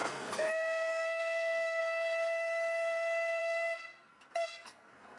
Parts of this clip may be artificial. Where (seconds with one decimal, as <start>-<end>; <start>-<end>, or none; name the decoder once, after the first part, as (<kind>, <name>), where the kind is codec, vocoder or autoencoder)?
0.0-1.8 (codec, SNAC); 3.4-5.2